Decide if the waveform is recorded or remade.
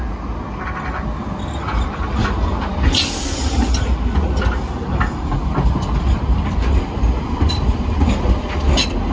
recorded